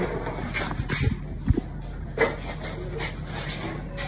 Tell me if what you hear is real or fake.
real